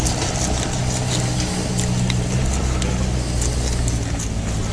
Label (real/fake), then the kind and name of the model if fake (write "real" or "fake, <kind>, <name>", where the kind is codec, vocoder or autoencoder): real